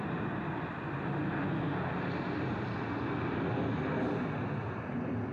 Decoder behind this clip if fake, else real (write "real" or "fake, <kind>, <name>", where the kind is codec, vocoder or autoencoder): real